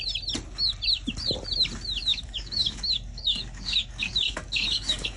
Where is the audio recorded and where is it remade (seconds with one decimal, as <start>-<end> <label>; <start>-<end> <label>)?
0.0-2.1 recorded; 2.1-5.2 remade